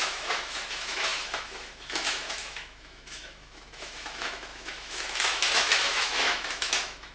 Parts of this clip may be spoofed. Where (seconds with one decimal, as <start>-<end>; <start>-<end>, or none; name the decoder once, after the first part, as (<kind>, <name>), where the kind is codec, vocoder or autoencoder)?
0.0-7.1 (autoencoder, DAC-VAE)